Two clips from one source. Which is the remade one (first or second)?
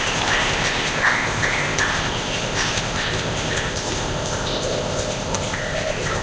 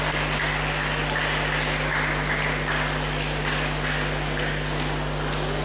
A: first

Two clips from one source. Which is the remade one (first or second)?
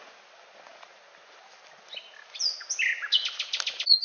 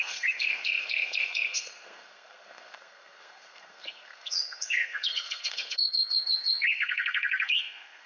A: second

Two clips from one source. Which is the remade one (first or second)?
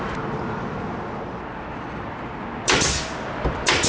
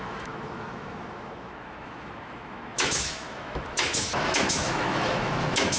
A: second